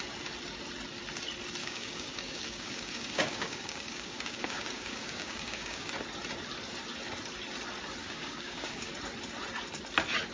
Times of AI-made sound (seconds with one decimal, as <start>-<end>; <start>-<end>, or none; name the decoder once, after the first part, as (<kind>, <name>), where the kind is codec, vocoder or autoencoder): 1.6-5.9 (codec, DAC); 8.0-8.9

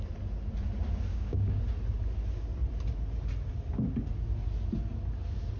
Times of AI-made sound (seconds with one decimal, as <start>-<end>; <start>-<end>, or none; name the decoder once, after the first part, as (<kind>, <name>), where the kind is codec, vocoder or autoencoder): 1.1-1.6 (codec, DAC)